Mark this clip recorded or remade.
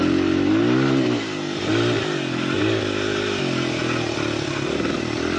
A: recorded